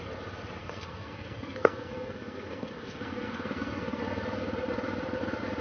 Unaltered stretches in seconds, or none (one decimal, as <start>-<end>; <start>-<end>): 0.0-0.6; 4.0-5.6